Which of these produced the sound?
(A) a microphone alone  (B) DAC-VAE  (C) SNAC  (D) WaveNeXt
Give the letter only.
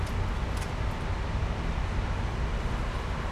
A